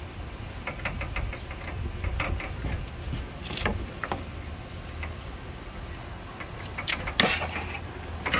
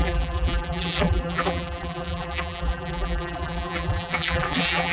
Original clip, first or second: first